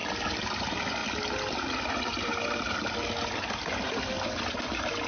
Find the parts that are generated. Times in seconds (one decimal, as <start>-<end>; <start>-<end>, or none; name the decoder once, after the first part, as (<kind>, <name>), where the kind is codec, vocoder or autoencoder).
none